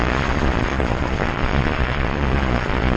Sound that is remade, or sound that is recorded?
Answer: remade